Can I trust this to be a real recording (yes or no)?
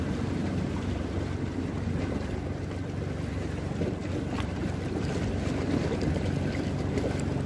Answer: yes